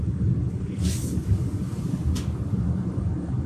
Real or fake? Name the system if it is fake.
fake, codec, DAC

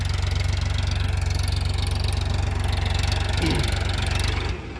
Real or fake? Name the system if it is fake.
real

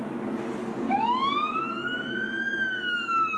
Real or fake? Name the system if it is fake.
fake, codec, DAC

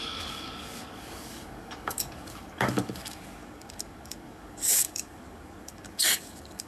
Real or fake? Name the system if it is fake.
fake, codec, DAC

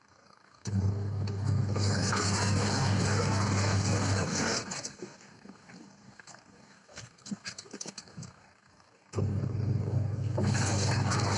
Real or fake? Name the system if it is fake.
fake, codec, DAC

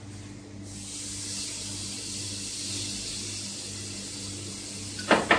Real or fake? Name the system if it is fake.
real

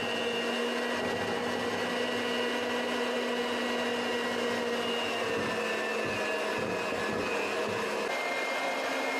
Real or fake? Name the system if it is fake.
real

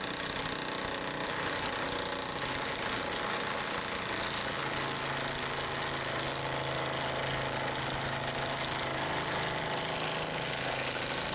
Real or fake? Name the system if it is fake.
real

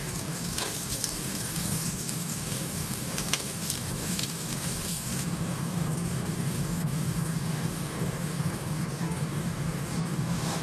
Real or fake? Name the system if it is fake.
fake, codec, DAC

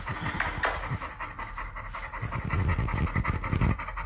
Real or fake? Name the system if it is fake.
real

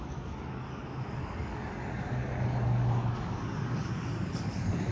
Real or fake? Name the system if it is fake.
fake, codec, DAC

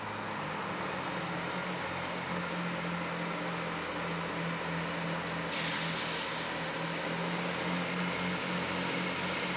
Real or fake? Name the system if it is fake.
real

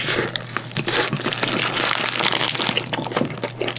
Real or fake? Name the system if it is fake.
real